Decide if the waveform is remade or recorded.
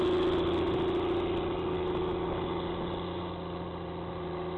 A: recorded